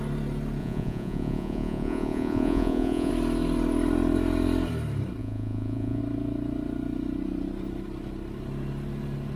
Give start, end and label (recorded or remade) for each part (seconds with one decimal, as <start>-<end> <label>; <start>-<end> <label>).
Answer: 0.0-0.6 recorded; 0.6-3.1 remade; 3.1-5.2 recorded; 5.2-6.0 remade; 6.0-9.4 recorded